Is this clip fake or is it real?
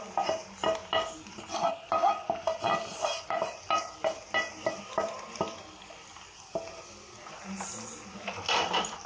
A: real